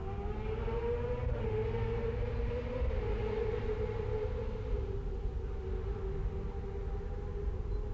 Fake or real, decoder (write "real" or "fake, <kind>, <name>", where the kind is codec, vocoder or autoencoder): real